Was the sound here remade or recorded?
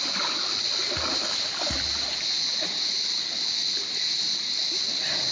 recorded